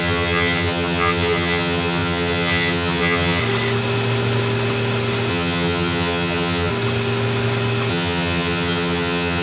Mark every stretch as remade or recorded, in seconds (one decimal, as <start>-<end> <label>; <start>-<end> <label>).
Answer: 0.0-3.4 remade; 3.4-5.3 recorded; 5.3-6.7 remade; 6.7-7.9 recorded; 7.9-9.4 remade